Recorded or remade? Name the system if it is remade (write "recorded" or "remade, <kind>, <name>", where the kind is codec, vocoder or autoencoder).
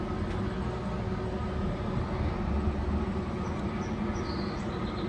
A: recorded